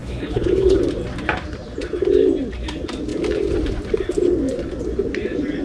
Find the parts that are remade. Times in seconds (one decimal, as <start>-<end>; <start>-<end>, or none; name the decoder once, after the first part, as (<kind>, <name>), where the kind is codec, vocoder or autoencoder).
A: 0.0-0.8 (codec, HILCodec)